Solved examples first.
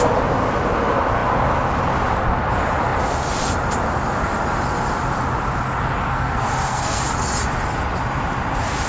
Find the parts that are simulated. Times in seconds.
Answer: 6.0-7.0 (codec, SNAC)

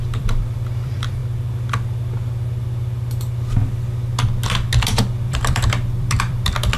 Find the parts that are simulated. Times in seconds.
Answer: 0.0-1.2 (vocoder, BigVGAN v2); 5.3-6.8

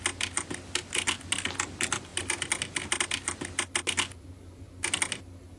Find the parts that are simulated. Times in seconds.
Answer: none

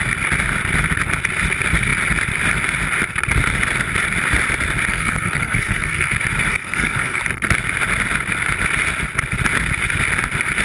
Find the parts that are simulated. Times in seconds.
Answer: 4.9-6.1 (codec, SNAC); 6.5-7.2

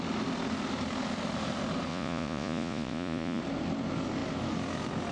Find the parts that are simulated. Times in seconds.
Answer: 1.9-3.4 (vocoder, Vocos)

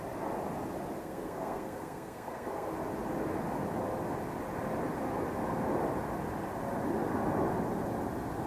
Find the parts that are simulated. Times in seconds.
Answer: 1.0-2.7 (codec, SNAC)

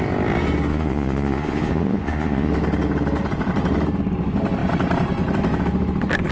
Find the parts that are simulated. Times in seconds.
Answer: 0.7-2.5 (vocoder, Vocos)

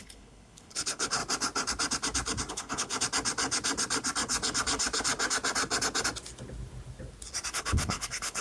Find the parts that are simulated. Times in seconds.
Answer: 0.0-1.2 (codec, HILCodec); 2.5-2.9; 7.5-8.4